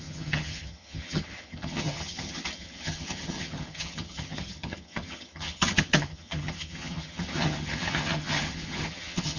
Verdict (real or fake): fake